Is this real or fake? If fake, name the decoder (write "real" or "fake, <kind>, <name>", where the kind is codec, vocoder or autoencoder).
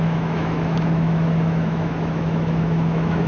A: fake, autoencoder, DAC-VAE